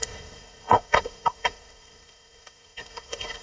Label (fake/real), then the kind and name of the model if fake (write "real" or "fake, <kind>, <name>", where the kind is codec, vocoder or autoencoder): fake, codec, SNAC